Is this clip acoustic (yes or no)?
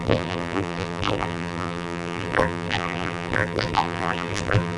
no